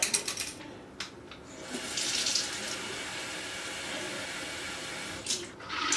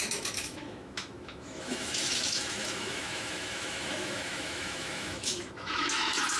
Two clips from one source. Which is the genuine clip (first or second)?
first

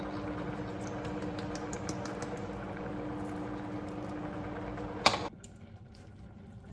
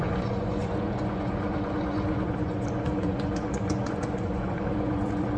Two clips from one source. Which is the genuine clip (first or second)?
first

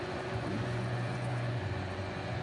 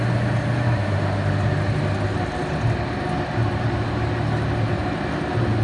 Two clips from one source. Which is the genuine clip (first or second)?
second